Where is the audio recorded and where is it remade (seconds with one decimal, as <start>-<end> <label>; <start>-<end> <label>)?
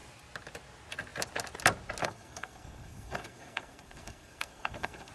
0.0-2.0 recorded; 2.0-5.1 remade